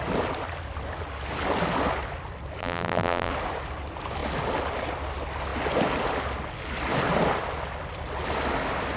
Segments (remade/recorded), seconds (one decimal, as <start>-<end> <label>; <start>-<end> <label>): 0.0-2.6 recorded; 2.6-3.3 remade; 3.3-9.0 recorded